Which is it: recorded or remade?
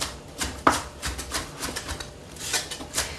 remade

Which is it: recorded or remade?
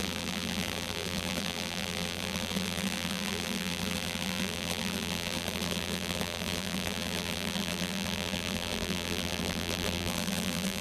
remade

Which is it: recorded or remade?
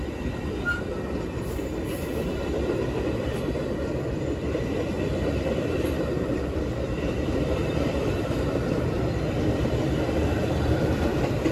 remade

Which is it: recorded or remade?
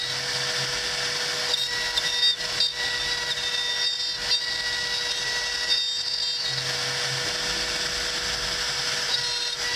recorded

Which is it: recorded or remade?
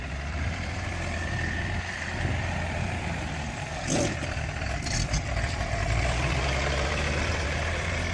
remade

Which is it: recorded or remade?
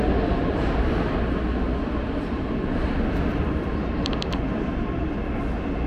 recorded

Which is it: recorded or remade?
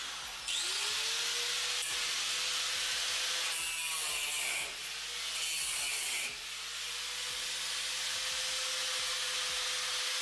recorded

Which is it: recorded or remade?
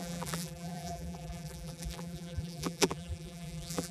remade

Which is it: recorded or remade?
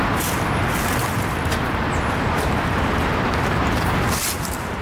remade